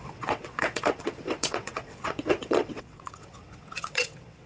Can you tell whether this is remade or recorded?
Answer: remade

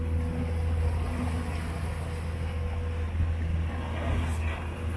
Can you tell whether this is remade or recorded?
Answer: recorded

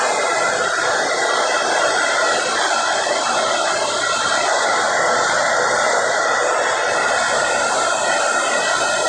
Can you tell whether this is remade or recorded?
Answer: recorded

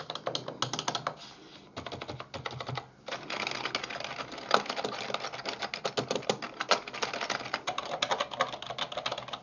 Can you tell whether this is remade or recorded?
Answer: recorded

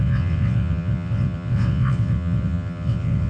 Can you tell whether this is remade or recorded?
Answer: remade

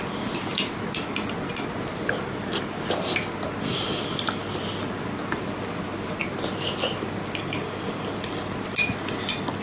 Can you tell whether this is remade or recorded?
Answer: recorded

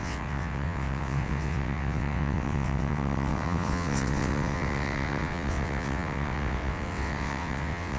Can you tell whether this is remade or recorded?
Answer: remade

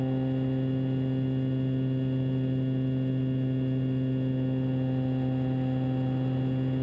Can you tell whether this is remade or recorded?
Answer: recorded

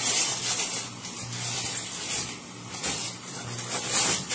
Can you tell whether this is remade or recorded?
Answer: recorded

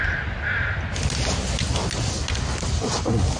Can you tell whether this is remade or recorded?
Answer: recorded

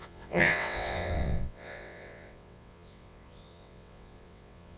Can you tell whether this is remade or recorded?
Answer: remade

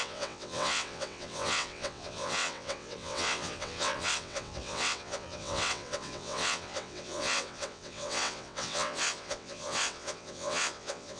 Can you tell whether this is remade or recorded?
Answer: remade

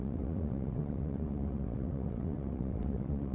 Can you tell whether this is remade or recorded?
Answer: remade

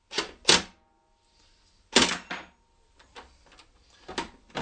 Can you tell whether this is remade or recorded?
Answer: recorded